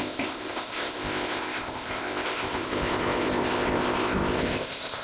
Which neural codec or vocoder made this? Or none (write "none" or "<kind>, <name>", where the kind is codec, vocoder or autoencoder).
codec, ZipCodec